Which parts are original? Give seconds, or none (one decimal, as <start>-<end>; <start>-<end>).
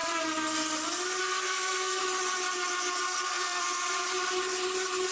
0.0-1.2; 2.0-3.0; 3.6-5.1